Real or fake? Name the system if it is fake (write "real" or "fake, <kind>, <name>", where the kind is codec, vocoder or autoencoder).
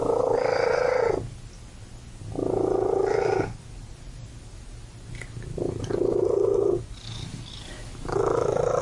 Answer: real